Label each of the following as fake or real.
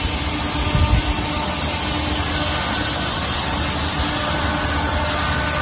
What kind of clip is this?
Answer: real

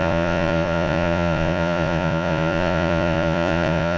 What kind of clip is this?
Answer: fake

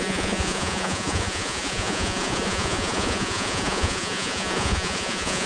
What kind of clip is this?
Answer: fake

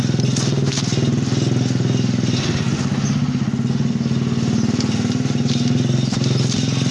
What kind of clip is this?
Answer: real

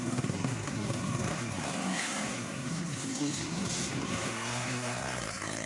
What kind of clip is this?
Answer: fake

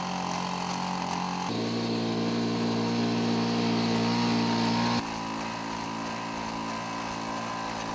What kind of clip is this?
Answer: real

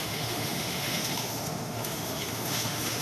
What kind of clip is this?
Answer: fake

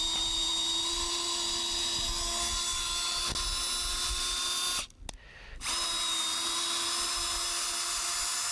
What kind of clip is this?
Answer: real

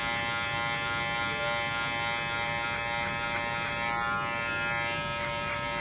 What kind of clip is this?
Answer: real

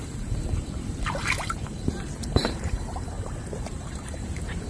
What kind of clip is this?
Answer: fake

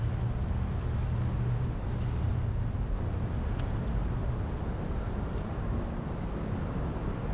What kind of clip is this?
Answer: real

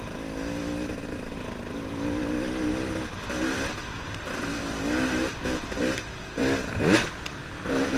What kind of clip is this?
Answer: real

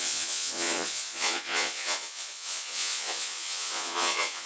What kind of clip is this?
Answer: fake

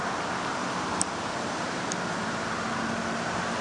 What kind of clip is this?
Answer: real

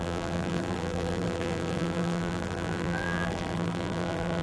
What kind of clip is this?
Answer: fake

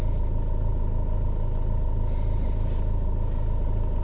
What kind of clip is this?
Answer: real